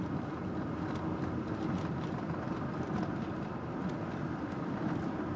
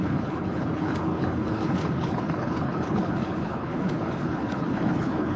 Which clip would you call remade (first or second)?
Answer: second